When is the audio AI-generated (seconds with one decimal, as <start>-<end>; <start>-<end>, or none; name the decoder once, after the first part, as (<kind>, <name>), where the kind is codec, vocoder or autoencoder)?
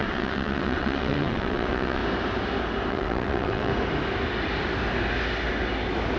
0.0-2.0 (vocoder, WaveNeXt); 2.9-3.7